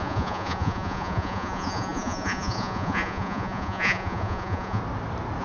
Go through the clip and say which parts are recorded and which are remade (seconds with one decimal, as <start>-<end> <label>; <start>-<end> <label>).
0.0-4.8 remade; 4.8-5.4 recorded